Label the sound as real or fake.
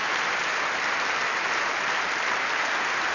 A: real